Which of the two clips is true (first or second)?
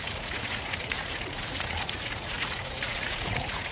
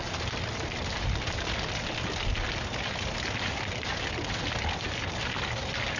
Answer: second